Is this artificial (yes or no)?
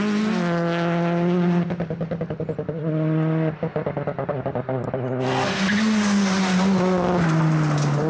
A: no